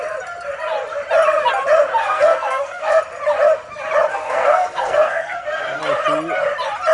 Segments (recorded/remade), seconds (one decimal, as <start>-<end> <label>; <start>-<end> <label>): 0.0-2.0 recorded; 2.0-3.0 remade; 3.0-4.1 recorded; 4.1-5.8 remade; 5.8-6.9 recorded